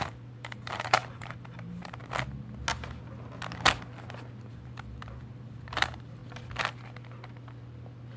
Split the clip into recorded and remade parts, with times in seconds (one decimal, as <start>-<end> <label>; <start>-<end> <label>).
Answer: 0.0-2.0 remade; 2.0-4.5 recorded; 4.5-6.2 remade; 6.2-8.2 recorded